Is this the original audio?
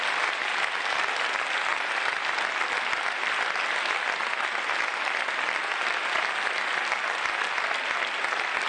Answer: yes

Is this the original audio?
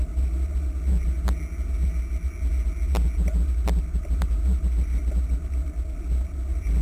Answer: yes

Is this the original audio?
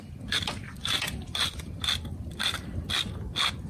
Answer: yes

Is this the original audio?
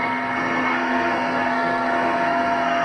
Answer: no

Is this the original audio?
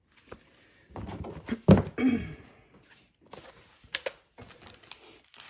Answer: yes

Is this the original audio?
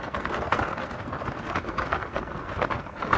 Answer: no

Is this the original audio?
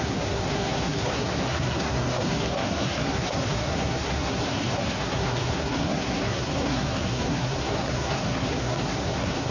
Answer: no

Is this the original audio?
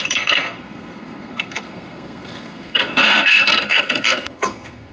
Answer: no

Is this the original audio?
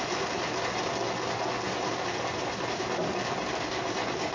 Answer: yes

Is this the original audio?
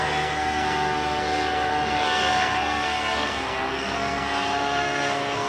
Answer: no